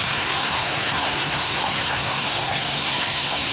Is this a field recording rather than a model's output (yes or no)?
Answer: no